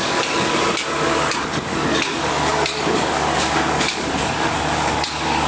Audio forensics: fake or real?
fake